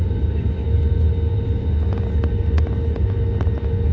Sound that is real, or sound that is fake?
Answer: real